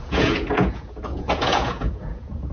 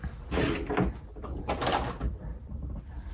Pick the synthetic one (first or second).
first